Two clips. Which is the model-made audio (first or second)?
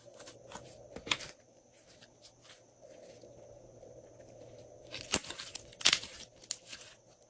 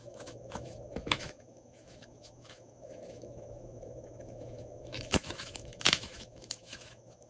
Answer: second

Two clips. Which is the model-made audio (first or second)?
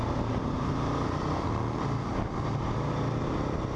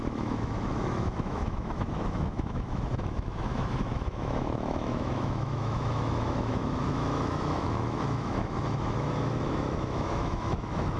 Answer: second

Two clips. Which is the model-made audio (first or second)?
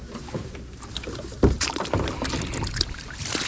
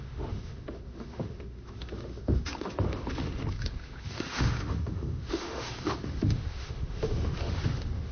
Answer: second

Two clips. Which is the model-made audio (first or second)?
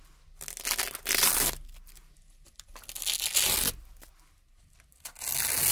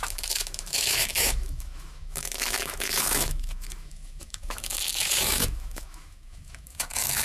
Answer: second